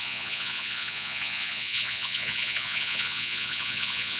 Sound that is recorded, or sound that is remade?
remade